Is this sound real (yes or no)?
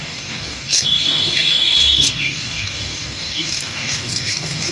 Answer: no